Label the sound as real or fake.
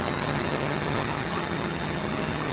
fake